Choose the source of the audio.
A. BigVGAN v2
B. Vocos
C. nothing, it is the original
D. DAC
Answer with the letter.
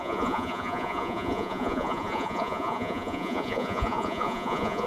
B